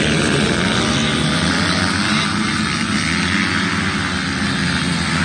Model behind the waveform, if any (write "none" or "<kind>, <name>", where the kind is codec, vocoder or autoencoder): none